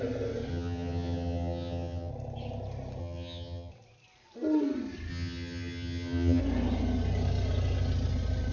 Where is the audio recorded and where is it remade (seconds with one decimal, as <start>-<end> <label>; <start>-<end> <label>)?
0.0-0.5 recorded; 0.5-2.1 remade; 2.1-3.0 recorded; 3.0-3.7 remade; 3.7-5.1 recorded; 5.1-6.4 remade; 6.4-8.5 recorded